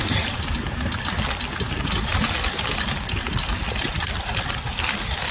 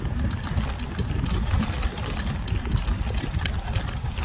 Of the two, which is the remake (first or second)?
first